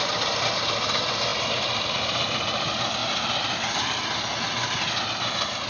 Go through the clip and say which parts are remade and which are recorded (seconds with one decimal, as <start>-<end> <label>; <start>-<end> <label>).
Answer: 0.0-5.7 recorded